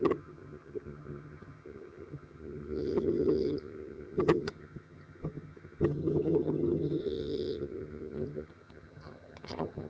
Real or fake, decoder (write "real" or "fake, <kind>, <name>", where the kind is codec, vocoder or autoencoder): fake, vocoder, HiFi-GAN